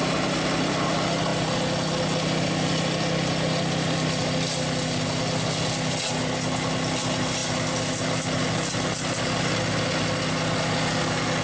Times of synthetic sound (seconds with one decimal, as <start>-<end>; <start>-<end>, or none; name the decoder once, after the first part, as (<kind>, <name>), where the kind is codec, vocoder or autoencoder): none